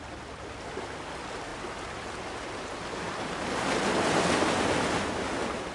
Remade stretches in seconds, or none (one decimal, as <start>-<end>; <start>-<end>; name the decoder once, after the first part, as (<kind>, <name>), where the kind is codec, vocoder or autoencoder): none